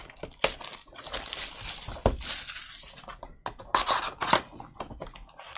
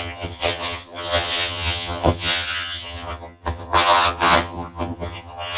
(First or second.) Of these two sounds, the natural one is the first